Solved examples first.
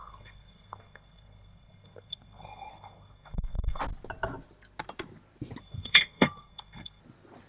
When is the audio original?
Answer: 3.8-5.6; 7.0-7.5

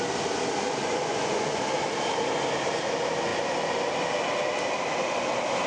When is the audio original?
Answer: 0.0-0.8; 1.6-5.7

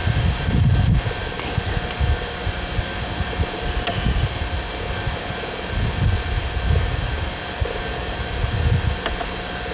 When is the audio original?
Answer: 0.0-9.7

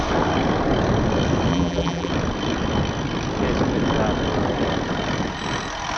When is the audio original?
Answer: 0.0-1.5; 2.1-6.0

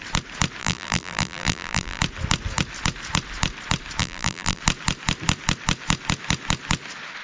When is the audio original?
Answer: 0.0-0.6; 2.0-4.0; 4.6-7.2

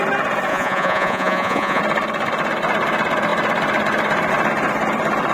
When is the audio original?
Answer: 0.0-0.5; 1.8-5.3